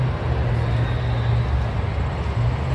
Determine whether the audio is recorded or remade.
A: recorded